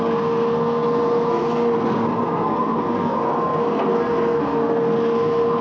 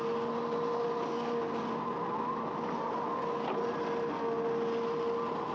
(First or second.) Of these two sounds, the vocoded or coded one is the first